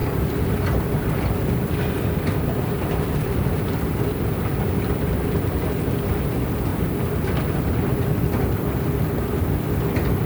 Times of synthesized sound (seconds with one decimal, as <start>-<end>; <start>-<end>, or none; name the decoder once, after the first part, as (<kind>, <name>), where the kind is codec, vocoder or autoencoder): 0.0-4.4 (vocoder, BigVGAN v2); 6.7-8.7